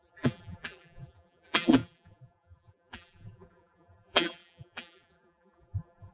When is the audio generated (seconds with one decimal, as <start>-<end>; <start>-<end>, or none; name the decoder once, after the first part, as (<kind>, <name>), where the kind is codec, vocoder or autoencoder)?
0.0-6.1 (vocoder, BigVGAN v2)